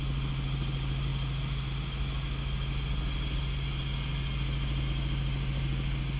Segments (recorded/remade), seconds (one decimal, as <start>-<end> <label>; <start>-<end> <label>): 0.0-6.2 recorded